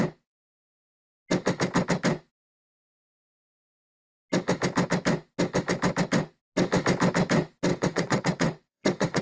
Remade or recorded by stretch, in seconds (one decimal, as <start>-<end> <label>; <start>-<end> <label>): 0.0-7.7 recorded; 7.7-9.2 remade